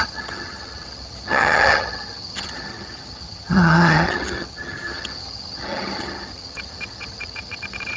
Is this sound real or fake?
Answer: fake